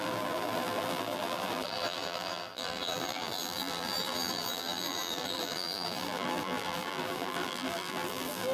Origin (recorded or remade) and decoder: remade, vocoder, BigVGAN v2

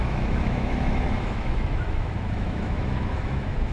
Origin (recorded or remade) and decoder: remade, autoencoder, DAC-VAE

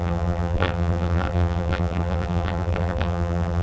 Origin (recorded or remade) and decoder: remade, vocoder, BigVGAN v2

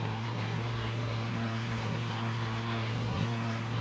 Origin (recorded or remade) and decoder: remade, codec, SNAC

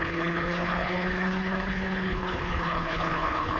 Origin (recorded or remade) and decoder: remade, codec, HILCodec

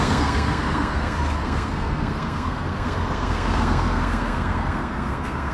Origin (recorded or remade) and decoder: remade, codec, SNAC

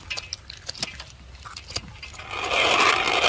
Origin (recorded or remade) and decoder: recorded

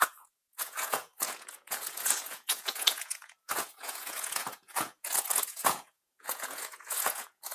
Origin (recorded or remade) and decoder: remade, vocoder, Vocos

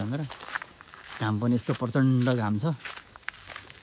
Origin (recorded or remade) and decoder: remade, codec, DAC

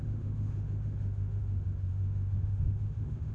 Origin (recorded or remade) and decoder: remade, autoencoder, DAC-VAE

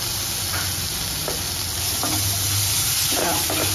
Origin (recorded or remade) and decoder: recorded